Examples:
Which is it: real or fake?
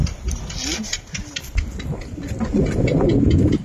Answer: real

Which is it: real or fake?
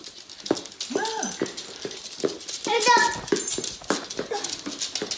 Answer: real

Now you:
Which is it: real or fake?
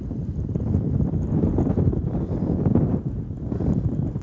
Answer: real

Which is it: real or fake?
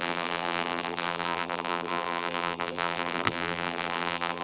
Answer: fake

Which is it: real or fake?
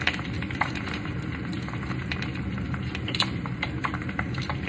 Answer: fake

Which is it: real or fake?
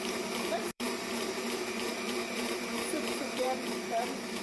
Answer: fake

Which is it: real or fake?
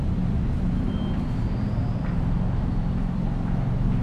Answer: real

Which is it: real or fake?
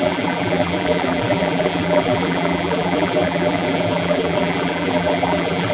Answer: fake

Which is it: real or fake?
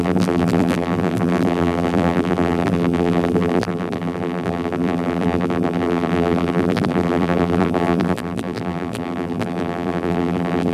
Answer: fake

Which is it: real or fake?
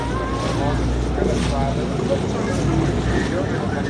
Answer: real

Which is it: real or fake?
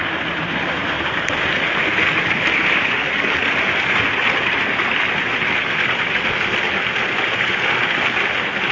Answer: real